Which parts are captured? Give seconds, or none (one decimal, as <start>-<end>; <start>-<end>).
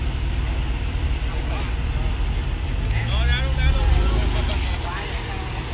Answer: 1.4-5.7